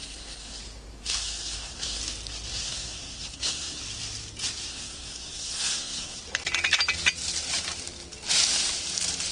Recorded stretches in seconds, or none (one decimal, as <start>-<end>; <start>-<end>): 0.6-1.0; 2.0-2.5; 3.8-4.7; 6.2-9.3